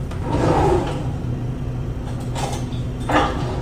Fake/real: real